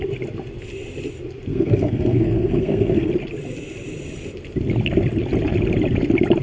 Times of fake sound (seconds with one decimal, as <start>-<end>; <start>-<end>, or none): 1.5-3.1